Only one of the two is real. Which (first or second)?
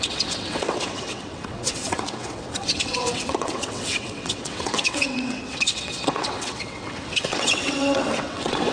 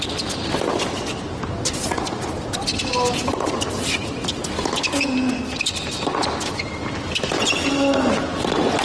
second